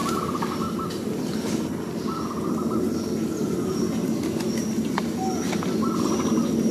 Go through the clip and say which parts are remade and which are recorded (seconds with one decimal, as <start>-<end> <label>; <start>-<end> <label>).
0.0-6.7 recorded